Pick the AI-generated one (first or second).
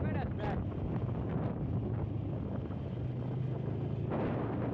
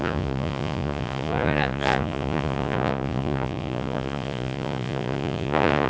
second